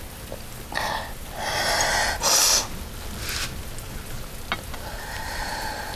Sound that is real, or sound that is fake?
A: real